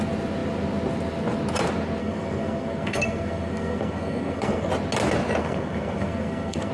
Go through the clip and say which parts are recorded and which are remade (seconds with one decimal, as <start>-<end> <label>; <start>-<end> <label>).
0.0-2.0 recorded; 2.0-4.7 remade; 4.7-5.4 recorded; 5.4-6.7 remade